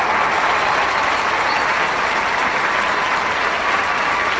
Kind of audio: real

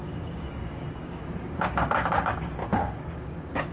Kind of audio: fake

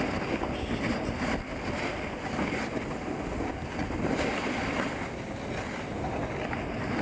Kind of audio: real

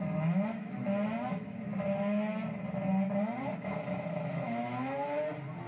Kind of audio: real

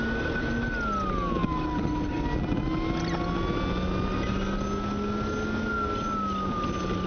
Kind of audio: real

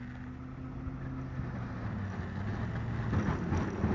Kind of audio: real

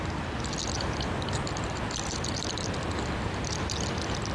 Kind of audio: real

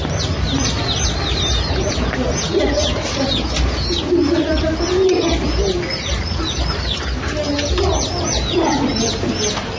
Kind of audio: real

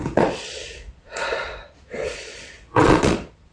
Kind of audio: fake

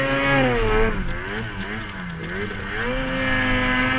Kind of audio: real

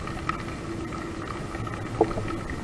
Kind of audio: real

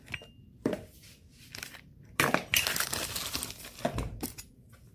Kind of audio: real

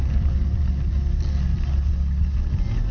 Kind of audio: real